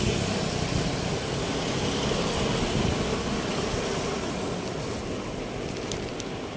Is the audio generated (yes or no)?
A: no